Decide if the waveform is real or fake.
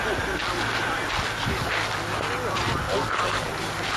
real